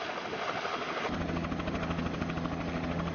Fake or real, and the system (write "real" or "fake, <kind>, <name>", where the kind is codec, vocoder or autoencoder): real